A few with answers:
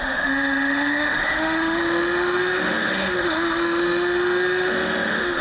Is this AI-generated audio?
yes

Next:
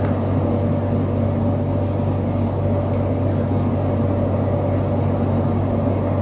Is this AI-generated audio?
no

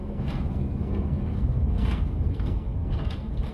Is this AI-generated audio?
yes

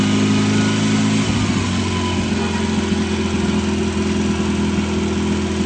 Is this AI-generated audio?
no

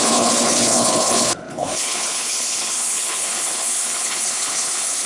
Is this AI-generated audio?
yes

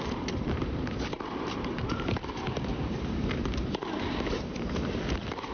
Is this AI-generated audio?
yes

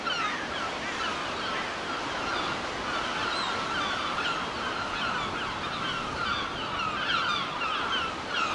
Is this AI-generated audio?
no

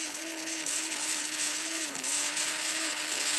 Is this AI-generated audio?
yes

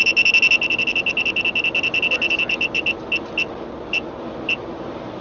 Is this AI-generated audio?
no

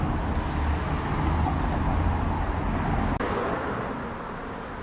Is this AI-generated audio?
no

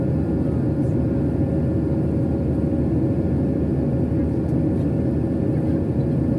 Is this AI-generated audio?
no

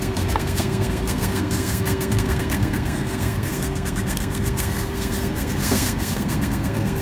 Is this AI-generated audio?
yes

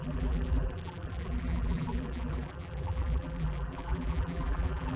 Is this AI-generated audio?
yes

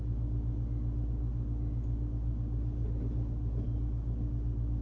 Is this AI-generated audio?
no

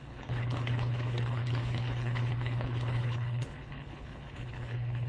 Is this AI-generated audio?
yes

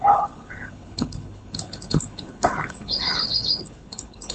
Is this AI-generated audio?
yes